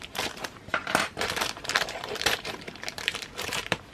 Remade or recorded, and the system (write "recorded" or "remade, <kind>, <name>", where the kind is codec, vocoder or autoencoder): remade, vocoder, BigVGAN v2